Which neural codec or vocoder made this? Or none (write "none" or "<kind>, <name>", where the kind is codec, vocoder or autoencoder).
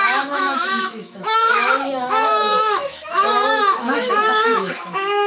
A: autoencoder, DAC-VAE